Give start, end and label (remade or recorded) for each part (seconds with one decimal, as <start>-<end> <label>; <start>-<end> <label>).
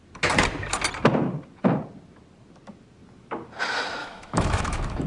0.0-4.0 recorded; 4.0-5.1 remade